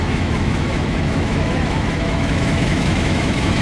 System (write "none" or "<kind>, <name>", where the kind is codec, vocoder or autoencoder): autoencoder, DAC-VAE